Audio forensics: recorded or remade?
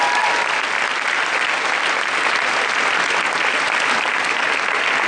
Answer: recorded